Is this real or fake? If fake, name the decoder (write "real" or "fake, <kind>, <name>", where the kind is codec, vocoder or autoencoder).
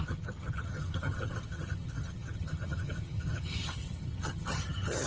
fake, vocoder, HiFi-GAN